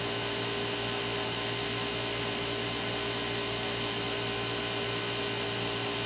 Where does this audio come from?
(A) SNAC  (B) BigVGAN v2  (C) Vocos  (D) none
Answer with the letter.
D